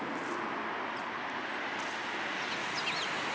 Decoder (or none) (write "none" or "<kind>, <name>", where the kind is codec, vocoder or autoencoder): none